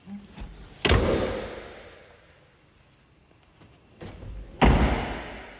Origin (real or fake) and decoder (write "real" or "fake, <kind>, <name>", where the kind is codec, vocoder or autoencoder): real